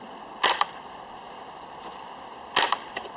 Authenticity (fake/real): fake